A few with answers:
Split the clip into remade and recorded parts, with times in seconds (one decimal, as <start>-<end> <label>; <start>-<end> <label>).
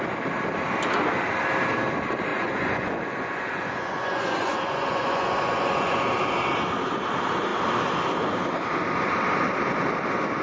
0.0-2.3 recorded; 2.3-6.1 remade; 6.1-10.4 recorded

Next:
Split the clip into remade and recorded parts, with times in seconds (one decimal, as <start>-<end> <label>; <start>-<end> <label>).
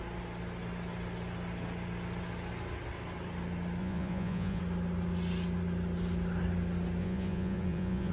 0.0-3.8 recorded; 3.8-4.6 remade; 4.6-7.0 recorded; 7.0-8.1 remade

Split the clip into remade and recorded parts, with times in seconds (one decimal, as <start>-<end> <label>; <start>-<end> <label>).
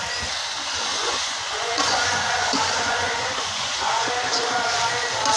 0.0-0.9 recorded; 0.9-4.1 remade; 4.1-5.4 recorded